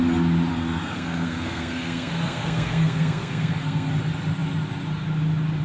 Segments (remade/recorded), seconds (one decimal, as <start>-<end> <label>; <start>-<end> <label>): 0.0-0.5 recorded; 0.5-3.9 remade; 3.9-5.6 recorded